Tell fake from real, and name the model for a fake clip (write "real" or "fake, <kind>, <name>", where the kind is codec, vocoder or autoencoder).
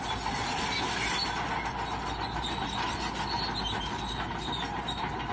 real